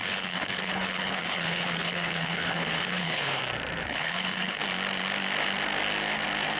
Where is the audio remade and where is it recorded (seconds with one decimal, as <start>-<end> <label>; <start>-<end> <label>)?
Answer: 0.0-3.4 remade; 3.4-3.9 recorded; 3.9-4.6 remade; 4.6-6.6 recorded